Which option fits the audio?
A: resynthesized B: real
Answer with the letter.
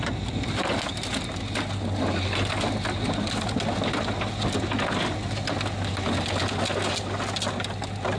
B